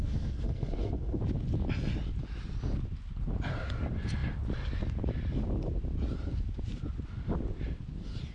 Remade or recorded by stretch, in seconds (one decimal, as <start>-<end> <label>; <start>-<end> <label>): 0.0-1.2 remade; 1.2-8.3 recorded